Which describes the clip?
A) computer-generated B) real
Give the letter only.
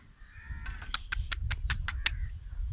B